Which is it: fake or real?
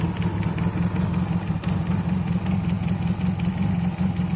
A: real